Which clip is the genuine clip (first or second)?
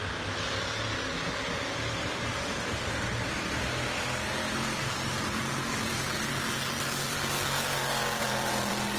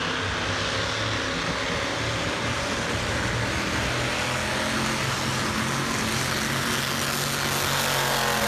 second